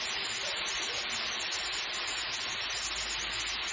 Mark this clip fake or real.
real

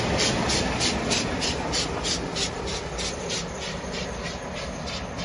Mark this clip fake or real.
real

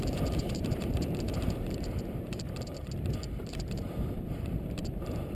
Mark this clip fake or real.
fake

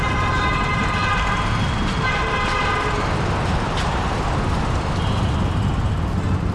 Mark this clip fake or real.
real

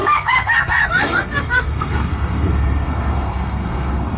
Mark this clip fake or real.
fake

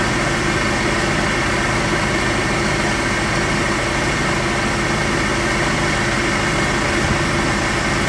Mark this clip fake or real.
real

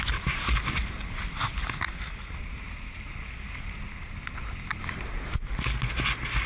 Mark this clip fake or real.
real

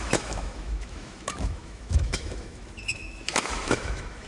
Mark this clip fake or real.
fake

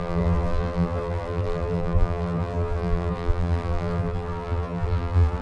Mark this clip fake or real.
fake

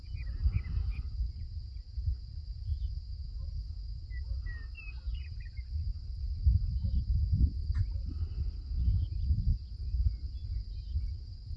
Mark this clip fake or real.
real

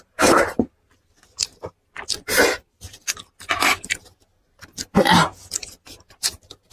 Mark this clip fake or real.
real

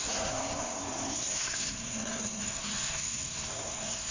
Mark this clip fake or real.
fake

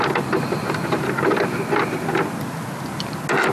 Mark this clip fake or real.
real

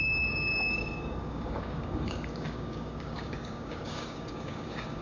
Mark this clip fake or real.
fake